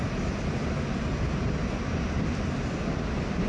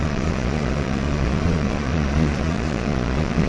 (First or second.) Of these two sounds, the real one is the first